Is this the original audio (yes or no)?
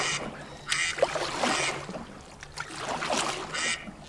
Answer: yes